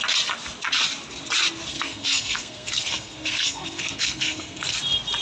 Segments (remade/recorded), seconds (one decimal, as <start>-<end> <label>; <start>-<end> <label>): 0.0-1.7 recorded; 1.7-4.8 remade; 4.8-5.2 recorded